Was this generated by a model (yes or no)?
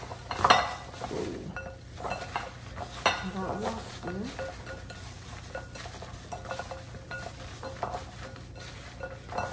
no